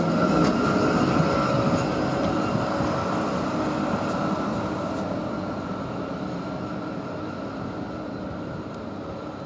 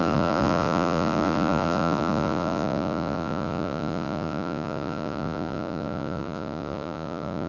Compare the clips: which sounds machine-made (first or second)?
second